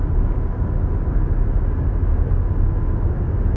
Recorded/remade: recorded